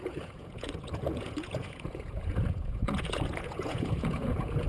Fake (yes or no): yes